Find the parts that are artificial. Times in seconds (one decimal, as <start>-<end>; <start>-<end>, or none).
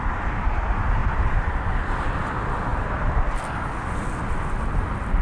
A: 1.0-2.1; 2.7-3.7